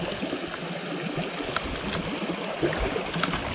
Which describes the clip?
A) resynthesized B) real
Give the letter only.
B